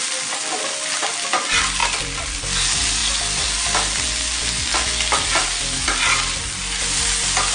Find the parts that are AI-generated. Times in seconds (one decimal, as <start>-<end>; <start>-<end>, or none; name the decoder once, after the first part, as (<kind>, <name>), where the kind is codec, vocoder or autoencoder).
1.8-2.4 (vocoder, BigVGAN v2)